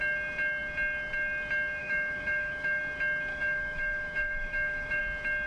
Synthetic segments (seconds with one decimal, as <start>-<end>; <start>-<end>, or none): 1.8-2.8; 3.3-5.0